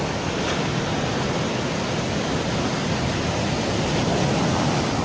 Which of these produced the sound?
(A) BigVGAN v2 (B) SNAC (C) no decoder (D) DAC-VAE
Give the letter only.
C